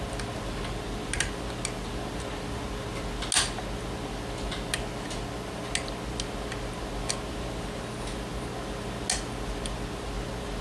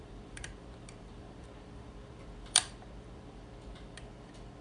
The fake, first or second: second